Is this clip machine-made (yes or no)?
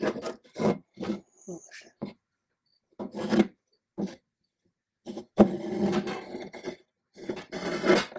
no